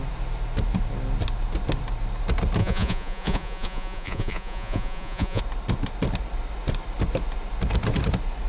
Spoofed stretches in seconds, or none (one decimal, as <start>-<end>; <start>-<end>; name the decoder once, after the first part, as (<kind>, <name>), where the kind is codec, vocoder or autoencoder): 2.6-5.4 (vocoder, Vocos)